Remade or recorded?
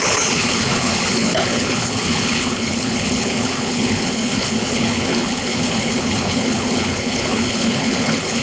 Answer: remade